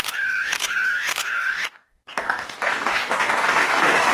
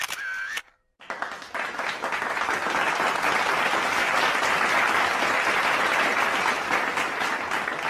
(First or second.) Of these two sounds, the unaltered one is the second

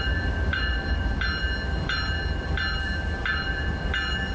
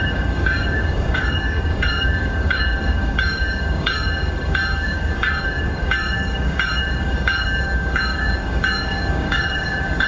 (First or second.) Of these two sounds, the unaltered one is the first